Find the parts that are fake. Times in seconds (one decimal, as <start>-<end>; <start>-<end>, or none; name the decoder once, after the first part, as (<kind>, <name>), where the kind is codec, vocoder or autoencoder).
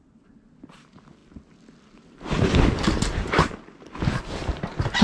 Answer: none